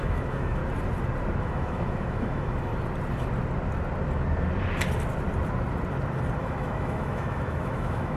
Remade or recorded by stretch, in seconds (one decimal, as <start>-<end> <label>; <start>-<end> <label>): 0.0-0.6 remade; 0.6-1.4 recorded; 1.4-2.7 remade; 2.7-6.4 recorded; 6.4-8.2 remade